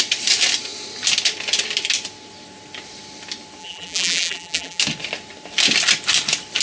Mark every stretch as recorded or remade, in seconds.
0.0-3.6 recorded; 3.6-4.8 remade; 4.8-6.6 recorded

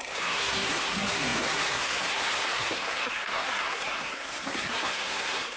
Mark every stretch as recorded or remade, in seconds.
0.0-5.6 remade